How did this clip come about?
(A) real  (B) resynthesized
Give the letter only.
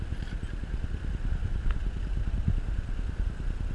A